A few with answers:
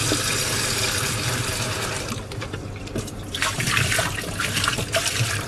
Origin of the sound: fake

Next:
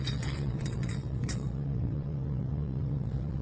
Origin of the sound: fake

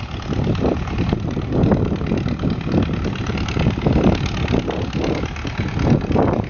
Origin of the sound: real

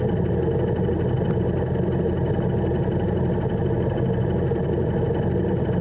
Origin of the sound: real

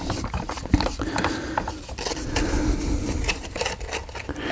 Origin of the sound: real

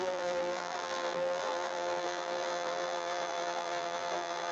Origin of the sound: fake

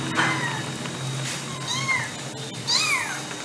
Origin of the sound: real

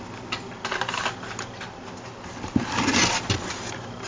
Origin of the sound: real